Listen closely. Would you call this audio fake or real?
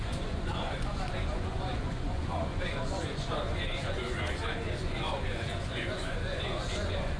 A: fake